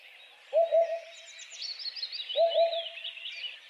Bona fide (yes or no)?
yes